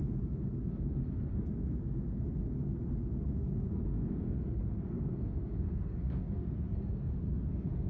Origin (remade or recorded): remade